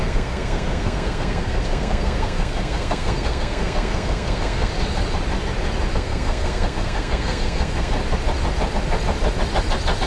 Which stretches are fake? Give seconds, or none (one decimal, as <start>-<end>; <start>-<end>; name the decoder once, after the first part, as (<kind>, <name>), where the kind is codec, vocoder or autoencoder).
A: 0.0-4.7 (codec, SNAC); 5.9-8.0